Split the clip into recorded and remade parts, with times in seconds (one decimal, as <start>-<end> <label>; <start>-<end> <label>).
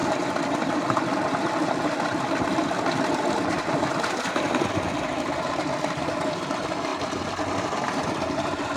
0.0-8.8 recorded